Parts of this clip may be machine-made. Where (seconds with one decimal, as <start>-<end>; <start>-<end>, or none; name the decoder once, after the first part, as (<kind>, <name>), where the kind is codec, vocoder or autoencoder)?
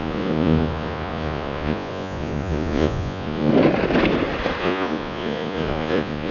0.0-3.5 (vocoder, Vocos); 4.6-6.3